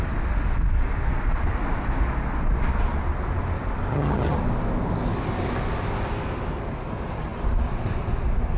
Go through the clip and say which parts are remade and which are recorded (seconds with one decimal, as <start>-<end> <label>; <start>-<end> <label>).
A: 0.0-3.9 recorded; 3.9-4.4 remade; 4.4-8.6 recorded